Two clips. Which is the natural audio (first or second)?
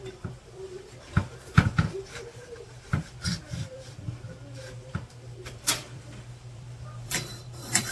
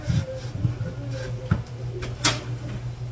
second